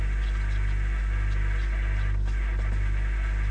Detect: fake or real real